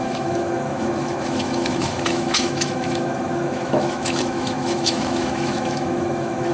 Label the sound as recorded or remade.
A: remade